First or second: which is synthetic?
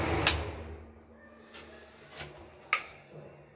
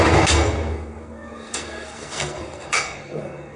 second